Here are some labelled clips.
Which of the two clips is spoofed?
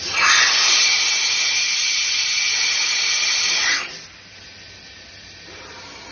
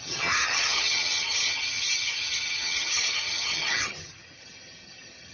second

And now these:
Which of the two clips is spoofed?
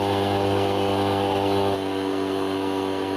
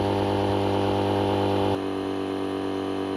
first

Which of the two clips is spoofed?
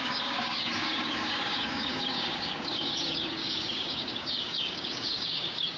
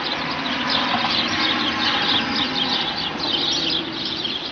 first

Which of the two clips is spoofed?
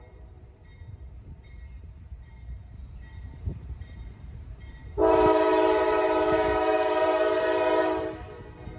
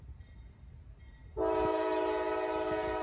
first